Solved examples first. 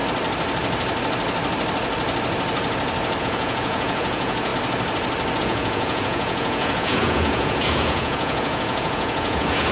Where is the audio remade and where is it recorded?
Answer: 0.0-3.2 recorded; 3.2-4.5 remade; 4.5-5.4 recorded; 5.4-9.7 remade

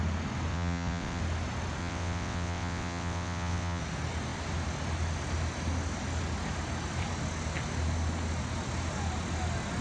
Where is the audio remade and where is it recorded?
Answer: 0.0-0.5 recorded; 0.5-1.2 remade; 1.2-1.8 recorded; 1.8-3.8 remade; 3.8-9.8 recorded

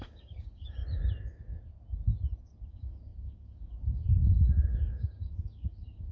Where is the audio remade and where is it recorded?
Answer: 0.0-0.8 remade; 0.8-2.7 recorded; 2.7-6.1 remade

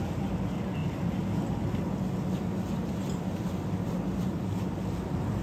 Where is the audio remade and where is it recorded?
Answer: 0.0-5.4 recorded